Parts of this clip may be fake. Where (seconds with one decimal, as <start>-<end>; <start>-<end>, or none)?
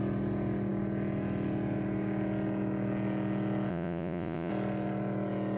3.7-4.5